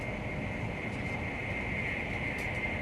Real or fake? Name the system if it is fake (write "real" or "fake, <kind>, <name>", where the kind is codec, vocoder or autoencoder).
real